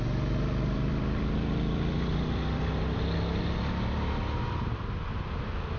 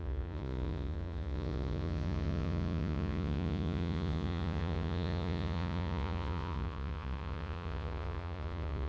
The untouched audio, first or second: first